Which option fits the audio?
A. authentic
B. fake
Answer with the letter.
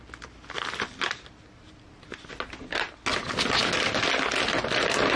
A